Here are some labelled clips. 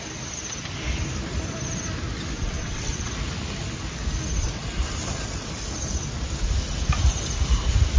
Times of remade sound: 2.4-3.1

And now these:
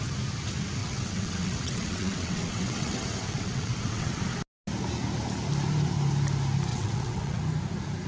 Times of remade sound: 0.8-4.2; 6.7-7.4